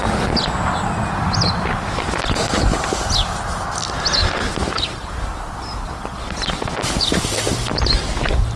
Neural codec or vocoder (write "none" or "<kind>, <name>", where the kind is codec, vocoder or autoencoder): none